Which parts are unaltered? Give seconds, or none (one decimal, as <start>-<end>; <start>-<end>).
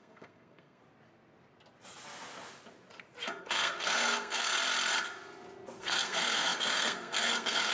0.8-3.4; 4.5-5.8